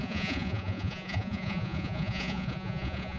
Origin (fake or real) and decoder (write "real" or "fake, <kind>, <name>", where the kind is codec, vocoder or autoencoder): fake, vocoder, Vocos